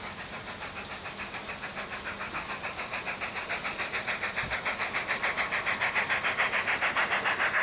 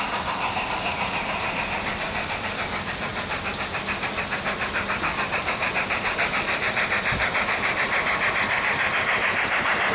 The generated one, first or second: second